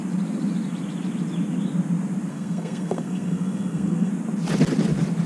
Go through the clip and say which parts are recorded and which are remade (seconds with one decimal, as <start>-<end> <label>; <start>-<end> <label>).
0.0-2.3 recorded; 2.3-4.1 remade; 4.1-5.3 recorded